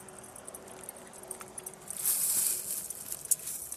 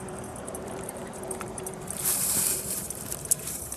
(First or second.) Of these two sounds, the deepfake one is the second